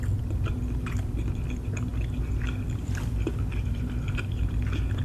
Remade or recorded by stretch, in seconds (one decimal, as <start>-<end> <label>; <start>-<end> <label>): 0.0-5.0 recorded